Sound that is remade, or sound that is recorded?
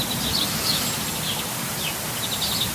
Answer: recorded